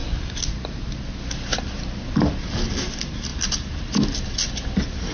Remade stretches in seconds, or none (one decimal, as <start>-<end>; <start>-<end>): none